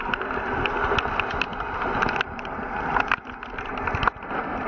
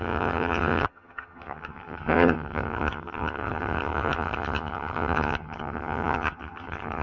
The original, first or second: first